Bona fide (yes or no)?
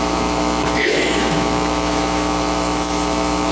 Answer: no